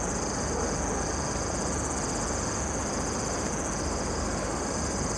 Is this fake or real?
real